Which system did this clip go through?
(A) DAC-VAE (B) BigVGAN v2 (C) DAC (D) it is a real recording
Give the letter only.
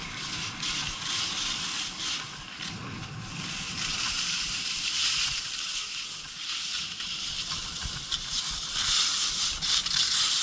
D